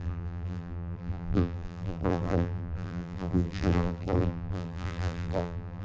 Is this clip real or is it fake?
fake